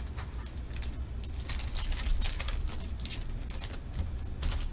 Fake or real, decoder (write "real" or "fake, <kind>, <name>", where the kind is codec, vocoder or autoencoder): real